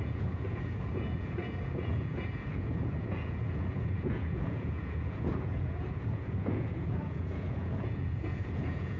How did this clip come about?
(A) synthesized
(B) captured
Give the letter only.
A